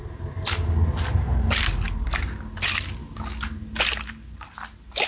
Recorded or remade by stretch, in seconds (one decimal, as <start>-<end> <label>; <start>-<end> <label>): 0.0-5.1 recorded